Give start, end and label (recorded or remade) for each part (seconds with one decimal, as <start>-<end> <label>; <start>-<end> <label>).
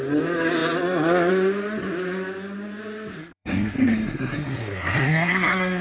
0.0-3.2 recorded; 3.2-5.8 remade